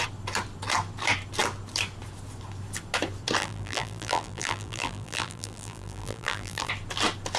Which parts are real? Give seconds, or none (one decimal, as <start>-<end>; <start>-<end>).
0.0-3.4; 6.7-7.4